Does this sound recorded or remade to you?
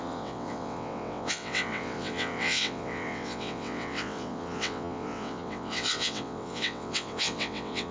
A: remade